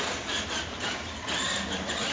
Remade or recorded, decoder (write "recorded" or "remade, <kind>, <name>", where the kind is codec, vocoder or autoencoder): recorded